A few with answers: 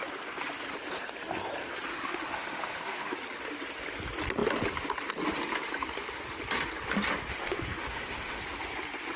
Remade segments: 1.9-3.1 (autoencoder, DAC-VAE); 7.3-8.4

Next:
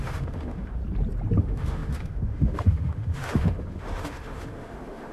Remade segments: 0.0-0.8 (autoencoder, DAC-VAE); 1.4-5.1